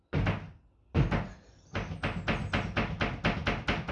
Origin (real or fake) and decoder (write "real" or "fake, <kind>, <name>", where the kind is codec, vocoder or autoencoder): real